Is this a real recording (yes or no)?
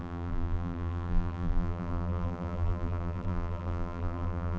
no